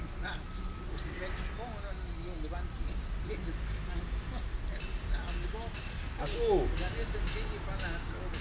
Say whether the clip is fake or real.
real